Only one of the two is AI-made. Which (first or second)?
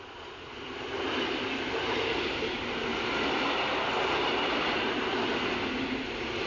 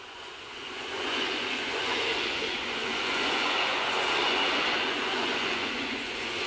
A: second